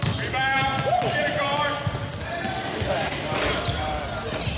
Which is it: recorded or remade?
recorded